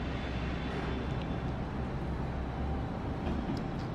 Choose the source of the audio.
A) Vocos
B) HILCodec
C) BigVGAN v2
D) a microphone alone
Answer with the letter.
D